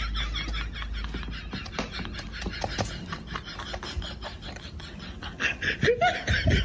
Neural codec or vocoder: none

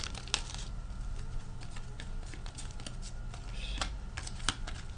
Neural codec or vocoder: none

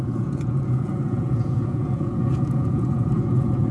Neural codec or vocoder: vocoder, Vocos